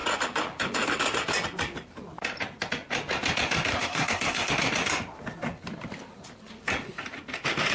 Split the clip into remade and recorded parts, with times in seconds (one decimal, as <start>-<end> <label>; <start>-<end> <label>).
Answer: 0.0-3.7 recorded; 3.7-4.5 remade; 4.5-7.7 recorded